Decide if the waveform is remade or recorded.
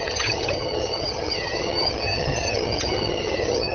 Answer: remade